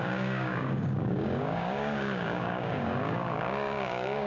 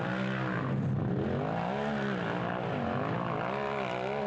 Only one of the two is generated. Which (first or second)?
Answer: first